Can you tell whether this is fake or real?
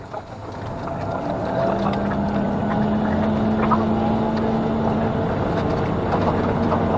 real